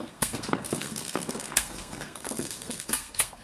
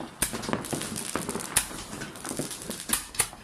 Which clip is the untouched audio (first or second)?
second